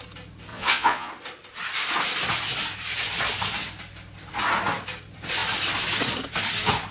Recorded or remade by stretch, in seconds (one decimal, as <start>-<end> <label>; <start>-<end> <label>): 0.0-0.5 recorded; 0.5-1.1 remade; 1.1-6.9 recorded